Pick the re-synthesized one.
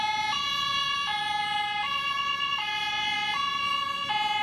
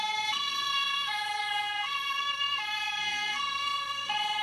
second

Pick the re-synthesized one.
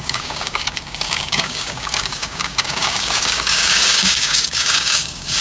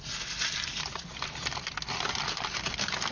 first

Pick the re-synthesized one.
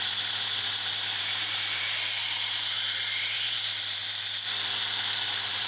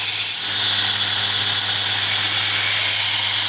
first